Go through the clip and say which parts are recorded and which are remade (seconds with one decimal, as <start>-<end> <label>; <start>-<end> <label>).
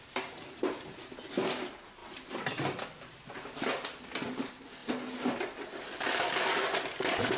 0.0-7.4 recorded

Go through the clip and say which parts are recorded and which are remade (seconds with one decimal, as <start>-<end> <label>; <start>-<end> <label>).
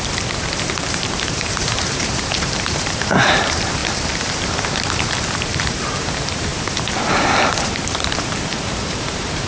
0.0-3.8 remade; 3.8-4.4 recorded; 4.4-9.5 remade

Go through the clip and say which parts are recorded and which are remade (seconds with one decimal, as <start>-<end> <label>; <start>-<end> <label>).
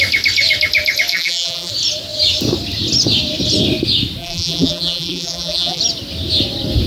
0.0-1.1 recorded; 1.1-1.7 remade; 1.7-4.2 recorded; 4.2-5.8 remade; 5.8-6.9 recorded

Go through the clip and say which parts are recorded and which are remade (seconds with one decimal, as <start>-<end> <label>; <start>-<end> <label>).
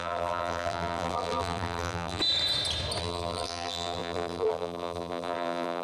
0.0-2.2 remade; 2.2-3.0 recorded; 3.0-5.8 remade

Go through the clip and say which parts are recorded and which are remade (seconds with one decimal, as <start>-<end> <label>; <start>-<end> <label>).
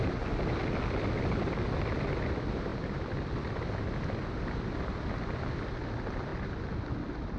0.0-2.7 recorded; 2.7-3.3 remade; 3.3-6.3 recorded; 6.3-6.8 remade; 6.8-7.4 recorded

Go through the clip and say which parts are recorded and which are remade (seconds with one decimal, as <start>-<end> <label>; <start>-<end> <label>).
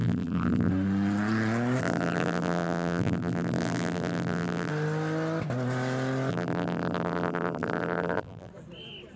0.0-0.7 remade; 0.7-1.8 recorded; 1.8-4.7 remade; 4.7-6.3 recorded; 6.3-8.5 remade; 8.5-9.2 recorded